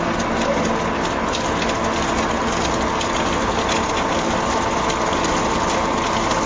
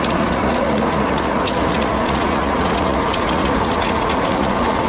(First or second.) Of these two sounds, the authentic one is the first